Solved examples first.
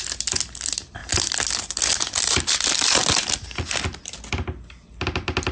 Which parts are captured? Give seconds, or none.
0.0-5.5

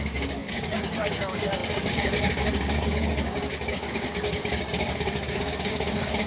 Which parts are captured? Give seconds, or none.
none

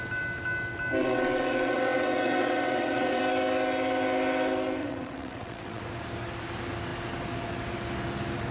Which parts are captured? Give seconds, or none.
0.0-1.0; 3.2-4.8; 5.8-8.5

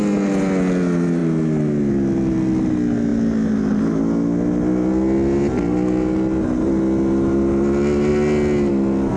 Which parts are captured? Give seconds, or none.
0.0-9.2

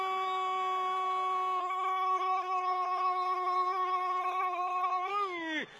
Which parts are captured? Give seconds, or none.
0.0-1.6; 5.1-5.8